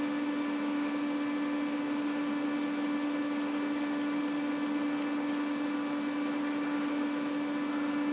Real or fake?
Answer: real